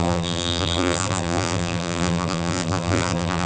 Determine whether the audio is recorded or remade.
remade